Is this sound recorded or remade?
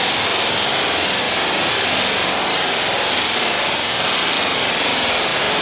recorded